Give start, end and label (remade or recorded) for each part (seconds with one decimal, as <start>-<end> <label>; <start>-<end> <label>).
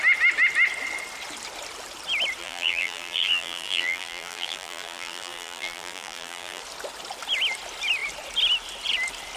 0.0-2.4 recorded; 2.4-6.6 remade; 6.6-9.4 recorded